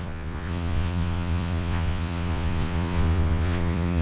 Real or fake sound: fake